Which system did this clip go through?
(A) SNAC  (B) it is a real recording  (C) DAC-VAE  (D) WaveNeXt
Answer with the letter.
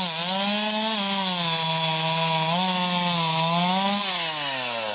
B